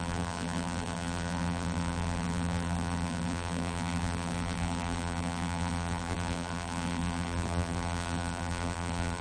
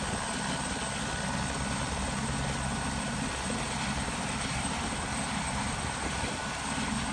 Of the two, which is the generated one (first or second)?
first